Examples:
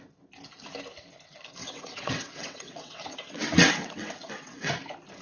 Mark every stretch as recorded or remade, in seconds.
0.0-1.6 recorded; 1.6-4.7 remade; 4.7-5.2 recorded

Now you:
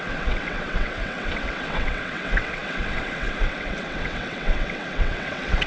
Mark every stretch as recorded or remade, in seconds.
0.0-5.7 remade

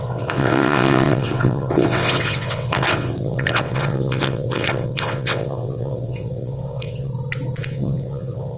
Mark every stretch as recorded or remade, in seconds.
0.0-7.1 remade; 7.1-7.6 recorded; 7.6-8.6 remade

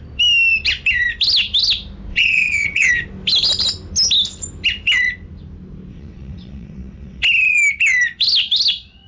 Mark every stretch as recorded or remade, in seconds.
0.0-2.1 recorded; 2.1-2.9 remade; 2.9-5.9 recorded; 5.9-7.2 remade; 7.2-9.1 recorded